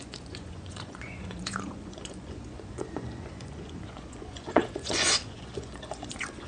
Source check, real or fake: fake